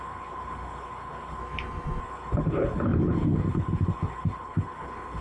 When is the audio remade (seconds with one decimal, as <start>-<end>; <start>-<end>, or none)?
0.0-1.4; 2.0-5.2